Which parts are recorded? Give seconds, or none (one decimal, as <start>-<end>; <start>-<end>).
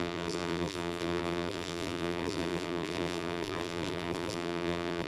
none